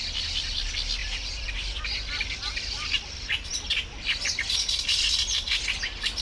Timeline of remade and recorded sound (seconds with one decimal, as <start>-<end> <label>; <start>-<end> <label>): 0.0-1.0 recorded; 1.0-1.8 remade; 1.8-6.2 recorded